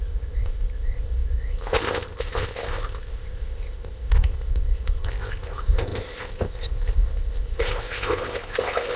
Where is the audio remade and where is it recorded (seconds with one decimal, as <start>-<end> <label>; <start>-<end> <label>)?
0.0-9.0 remade